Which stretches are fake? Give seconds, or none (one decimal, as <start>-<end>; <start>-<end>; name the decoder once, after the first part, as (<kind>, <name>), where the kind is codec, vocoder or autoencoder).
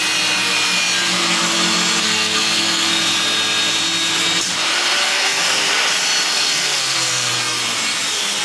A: 2.0-3.0 (codec, SNAC); 5.0-5.5; 6.3-7.3